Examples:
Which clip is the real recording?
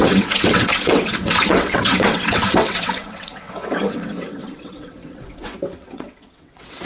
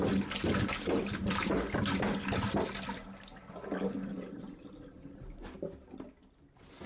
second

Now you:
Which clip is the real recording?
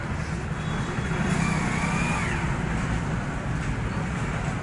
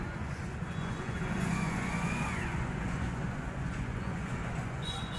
first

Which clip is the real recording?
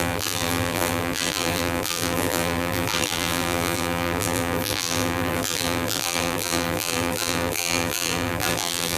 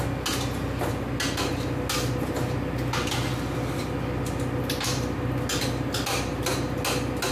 second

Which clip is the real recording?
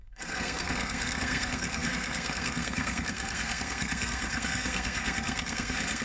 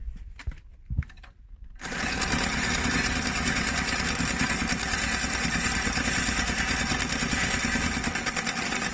second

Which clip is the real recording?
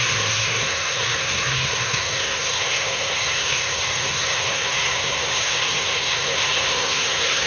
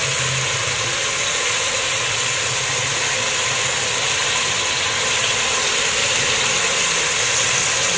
second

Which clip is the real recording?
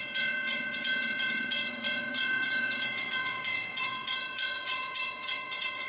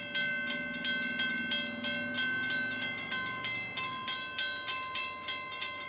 second